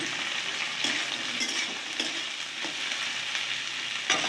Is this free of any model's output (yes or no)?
yes